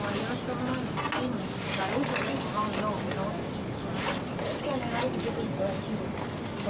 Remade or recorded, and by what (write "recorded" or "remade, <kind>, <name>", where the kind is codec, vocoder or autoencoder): recorded